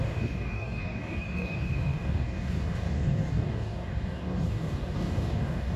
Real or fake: fake